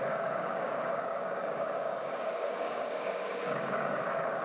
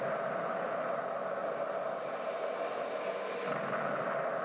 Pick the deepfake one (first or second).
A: first